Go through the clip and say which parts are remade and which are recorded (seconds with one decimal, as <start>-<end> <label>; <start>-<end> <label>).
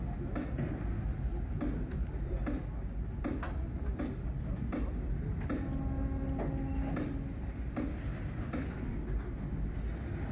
0.0-10.3 recorded